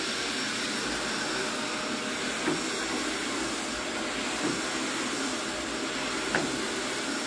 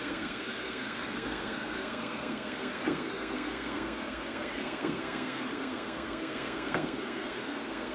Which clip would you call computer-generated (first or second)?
second